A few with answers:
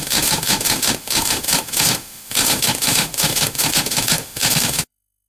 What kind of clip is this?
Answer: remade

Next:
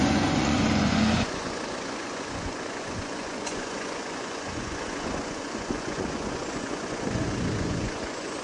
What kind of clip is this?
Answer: remade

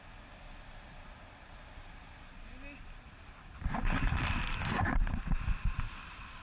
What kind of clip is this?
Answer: recorded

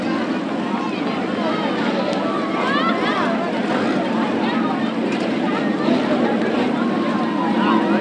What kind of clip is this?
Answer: recorded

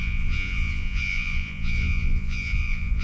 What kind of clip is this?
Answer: remade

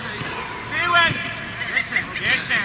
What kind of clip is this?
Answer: recorded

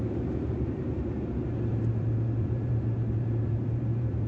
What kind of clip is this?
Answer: remade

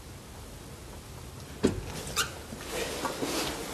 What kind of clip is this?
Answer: recorded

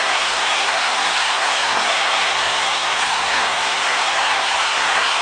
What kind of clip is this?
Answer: remade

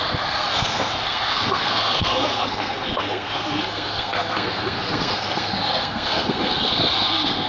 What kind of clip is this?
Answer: remade